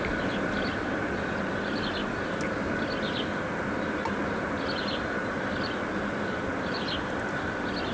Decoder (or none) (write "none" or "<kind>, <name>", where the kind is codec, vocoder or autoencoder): none